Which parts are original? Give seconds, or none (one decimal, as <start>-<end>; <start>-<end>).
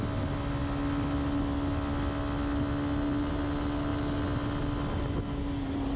0.0-6.0